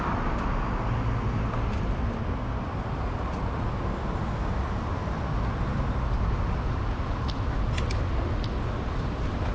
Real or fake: real